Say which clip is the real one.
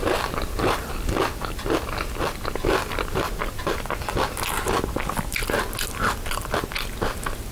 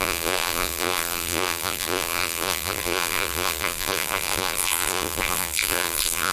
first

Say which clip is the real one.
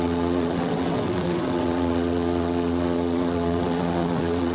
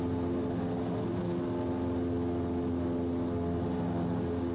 second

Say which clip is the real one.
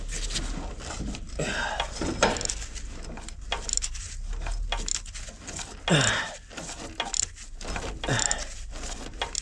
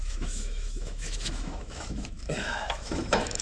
first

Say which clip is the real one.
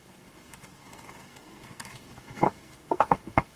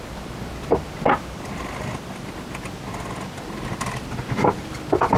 second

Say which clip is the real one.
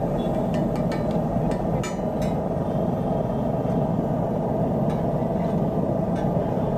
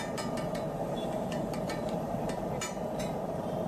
first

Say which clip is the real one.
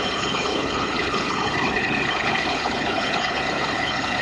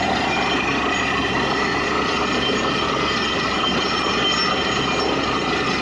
second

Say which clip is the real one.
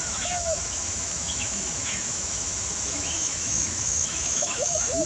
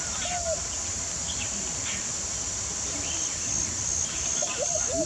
second